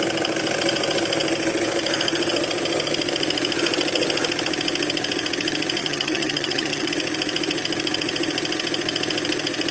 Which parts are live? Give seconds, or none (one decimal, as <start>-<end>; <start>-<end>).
0.0-5.8; 6.9-9.7